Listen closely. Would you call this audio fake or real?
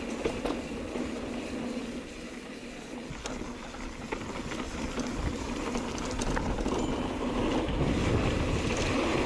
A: real